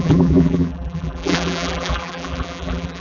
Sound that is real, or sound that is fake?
fake